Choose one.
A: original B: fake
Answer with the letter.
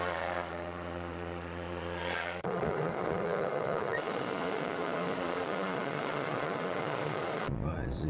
B